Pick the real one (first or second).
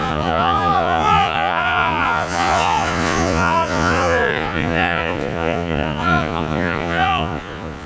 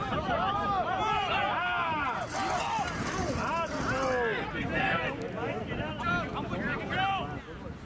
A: second